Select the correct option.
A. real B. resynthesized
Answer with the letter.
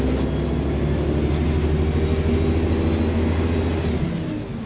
A